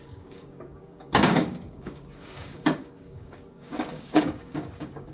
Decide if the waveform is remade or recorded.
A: remade